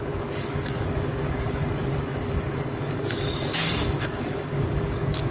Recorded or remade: remade